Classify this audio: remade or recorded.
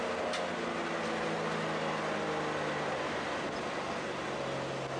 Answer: recorded